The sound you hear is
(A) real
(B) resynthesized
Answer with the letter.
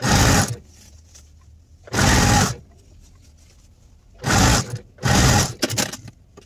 A